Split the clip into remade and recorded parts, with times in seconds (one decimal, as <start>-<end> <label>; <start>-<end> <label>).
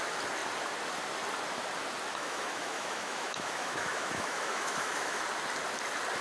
0.0-2.1 recorded; 2.1-5.2 remade; 5.2-6.2 recorded